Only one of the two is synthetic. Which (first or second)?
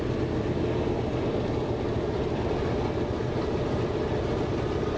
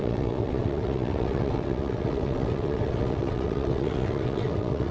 second